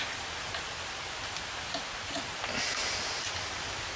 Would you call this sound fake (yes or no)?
no